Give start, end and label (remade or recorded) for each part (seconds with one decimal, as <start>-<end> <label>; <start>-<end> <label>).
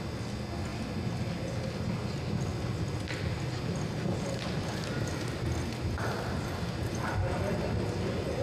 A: 0.0-8.4 recorded